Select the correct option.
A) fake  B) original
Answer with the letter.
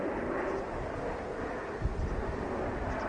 B